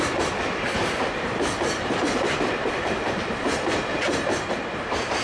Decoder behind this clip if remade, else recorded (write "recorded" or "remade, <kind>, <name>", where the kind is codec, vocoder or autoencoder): remade, vocoder, BigVGAN v2